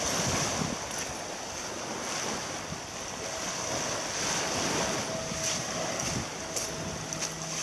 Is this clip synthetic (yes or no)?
no